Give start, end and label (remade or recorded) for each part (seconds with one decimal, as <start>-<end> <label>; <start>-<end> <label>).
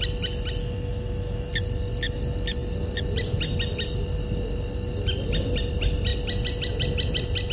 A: 0.0-0.6 recorded; 0.6-1.5 remade; 1.5-7.5 recorded